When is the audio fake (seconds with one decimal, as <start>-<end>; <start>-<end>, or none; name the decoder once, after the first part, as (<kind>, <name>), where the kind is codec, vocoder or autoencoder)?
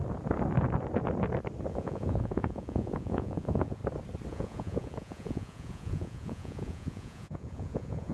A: 1.7-3.8 (vocoder, Vocos); 4.3-8.1